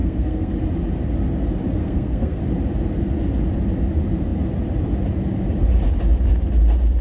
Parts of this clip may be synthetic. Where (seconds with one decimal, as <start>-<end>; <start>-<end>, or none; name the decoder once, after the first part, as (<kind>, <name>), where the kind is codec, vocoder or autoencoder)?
0.0-0.5 (codec, SNAC); 1.8-2.4